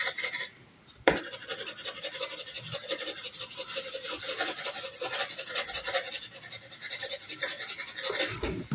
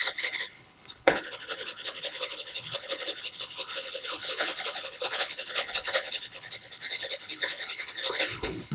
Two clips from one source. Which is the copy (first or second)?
second